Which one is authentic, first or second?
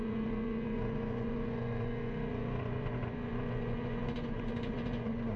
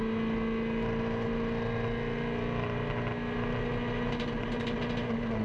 second